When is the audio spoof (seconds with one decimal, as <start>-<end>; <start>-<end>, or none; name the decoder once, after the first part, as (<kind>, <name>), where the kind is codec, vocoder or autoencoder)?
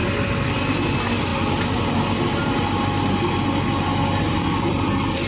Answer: 0.6-1.3 (vocoder, BigVGAN v2); 4.3-5.3